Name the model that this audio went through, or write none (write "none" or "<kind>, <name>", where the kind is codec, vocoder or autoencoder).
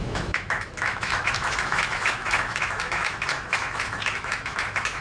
autoencoder, DAC-VAE